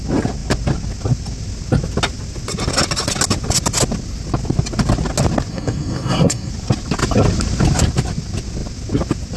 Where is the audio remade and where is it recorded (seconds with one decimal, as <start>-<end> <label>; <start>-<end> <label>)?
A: 0.0-5.5 recorded; 5.5-6.5 remade; 6.5-9.4 recorded